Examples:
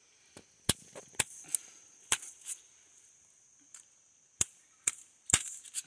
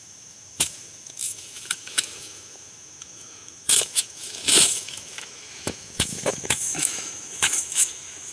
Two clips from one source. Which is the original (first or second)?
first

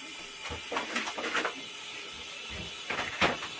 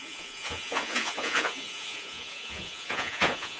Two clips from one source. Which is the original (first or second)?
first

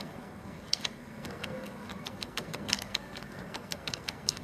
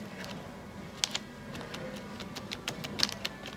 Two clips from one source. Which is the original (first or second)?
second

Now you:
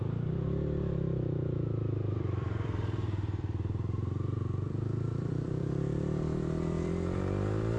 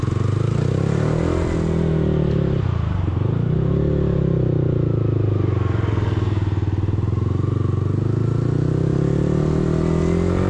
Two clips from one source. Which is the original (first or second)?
second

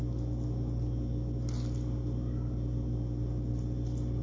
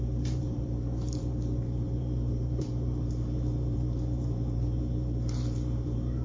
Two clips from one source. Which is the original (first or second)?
first